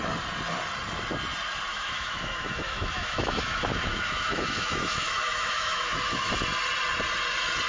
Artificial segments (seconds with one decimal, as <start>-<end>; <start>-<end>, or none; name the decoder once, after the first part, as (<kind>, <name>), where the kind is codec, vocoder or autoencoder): 1.7-6.3 (autoencoder, DAC-VAE)